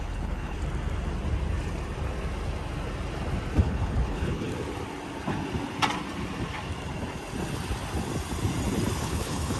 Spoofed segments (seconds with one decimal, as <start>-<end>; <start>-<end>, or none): 0.0-0.6; 3.6-4.5; 9.0-9.6